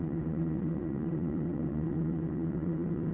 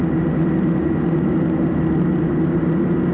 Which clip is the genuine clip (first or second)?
second